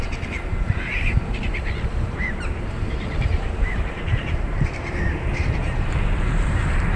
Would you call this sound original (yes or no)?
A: no